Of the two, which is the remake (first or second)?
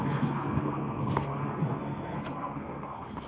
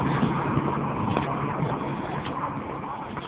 first